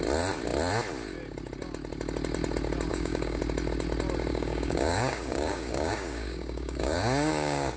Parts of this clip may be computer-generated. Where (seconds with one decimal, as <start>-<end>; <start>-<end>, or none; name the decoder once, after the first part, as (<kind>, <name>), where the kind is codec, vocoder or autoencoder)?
2.9-3.4 (codec, DAC); 4.3-7.8